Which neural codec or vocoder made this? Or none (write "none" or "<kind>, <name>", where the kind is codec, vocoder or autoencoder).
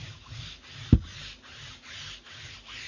none